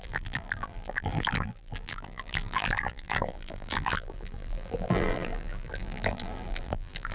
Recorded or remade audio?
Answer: remade